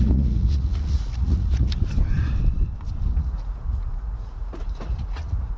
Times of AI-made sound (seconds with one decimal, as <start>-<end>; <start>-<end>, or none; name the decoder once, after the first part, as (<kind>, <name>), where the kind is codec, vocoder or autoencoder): 0.0-1.8 (vocoder, Vocos); 3.2-5.6